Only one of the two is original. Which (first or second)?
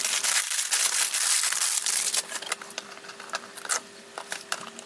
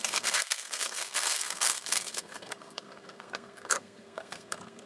first